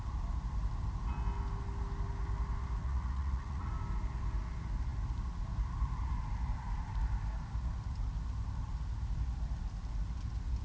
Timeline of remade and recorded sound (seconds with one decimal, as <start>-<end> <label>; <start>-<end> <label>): 0.0-2.8 recorded; 2.8-3.7 remade; 3.7-10.6 recorded